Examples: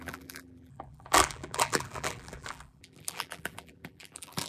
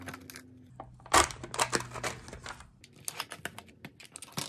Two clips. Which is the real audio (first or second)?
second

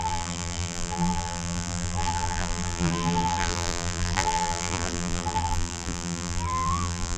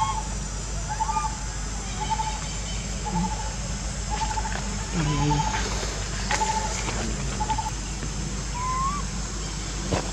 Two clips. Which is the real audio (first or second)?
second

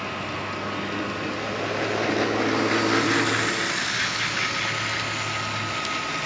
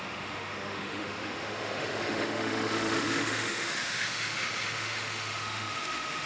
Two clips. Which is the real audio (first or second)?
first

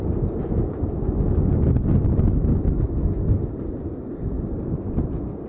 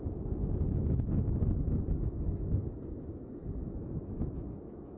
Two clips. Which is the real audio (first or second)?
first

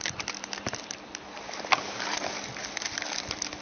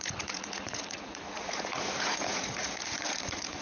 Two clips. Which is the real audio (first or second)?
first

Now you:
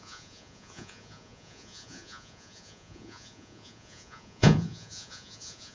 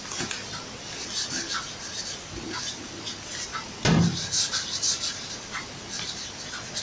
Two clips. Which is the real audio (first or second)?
second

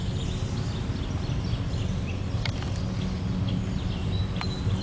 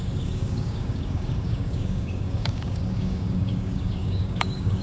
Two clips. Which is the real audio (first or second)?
first